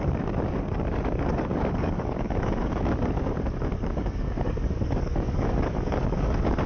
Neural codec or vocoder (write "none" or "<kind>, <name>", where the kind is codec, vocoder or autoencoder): codec, DAC